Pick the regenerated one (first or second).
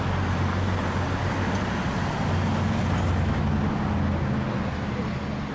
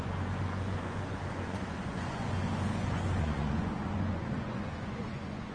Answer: second